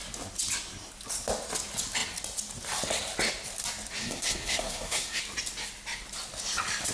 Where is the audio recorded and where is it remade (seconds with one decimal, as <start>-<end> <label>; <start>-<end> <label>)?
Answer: 0.0-4.0 recorded; 4.0-5.2 remade; 5.2-6.9 recorded